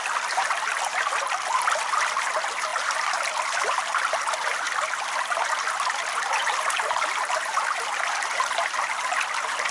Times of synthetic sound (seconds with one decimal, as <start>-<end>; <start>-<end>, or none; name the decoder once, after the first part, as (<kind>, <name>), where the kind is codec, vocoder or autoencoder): none

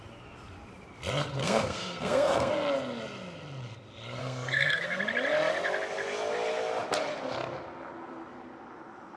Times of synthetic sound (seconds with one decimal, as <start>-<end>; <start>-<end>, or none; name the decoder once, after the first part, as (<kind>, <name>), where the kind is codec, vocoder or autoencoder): 1.4-2.5 (codec, SNAC); 4.2-5.0

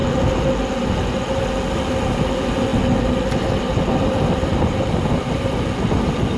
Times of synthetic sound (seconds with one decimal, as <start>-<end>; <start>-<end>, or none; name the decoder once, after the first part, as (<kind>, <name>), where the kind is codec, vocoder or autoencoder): none